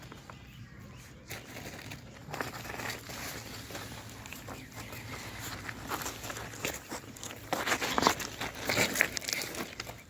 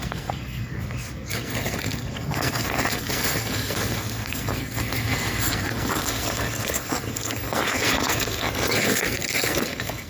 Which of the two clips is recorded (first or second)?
first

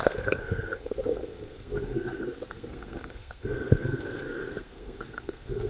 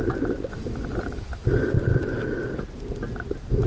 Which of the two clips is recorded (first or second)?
second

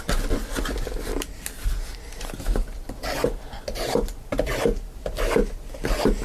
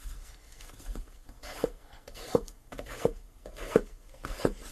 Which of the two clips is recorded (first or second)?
first